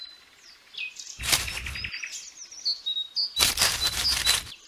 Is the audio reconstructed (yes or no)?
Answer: no